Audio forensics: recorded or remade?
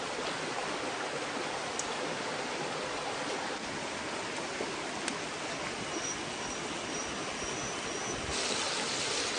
recorded